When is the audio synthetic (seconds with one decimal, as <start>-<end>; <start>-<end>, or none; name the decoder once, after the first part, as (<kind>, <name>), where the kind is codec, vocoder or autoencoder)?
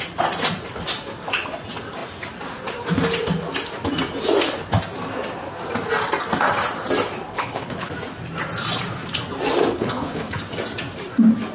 7.3-7.9 (codec, HILCodec); 9.7-10.4